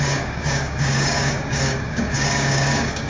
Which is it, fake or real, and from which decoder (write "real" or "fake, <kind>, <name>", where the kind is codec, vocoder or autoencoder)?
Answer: fake, codec, DAC